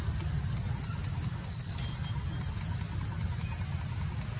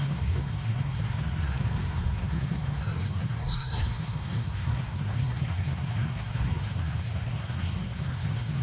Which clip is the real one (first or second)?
first